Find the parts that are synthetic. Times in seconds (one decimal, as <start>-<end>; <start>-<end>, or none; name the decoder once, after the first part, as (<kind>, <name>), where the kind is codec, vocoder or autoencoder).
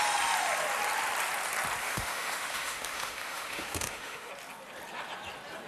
1.8-4.3 (autoencoder, DAC-VAE)